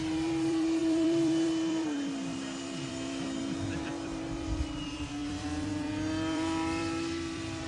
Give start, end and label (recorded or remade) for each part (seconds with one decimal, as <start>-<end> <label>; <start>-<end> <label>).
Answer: 0.0-7.7 remade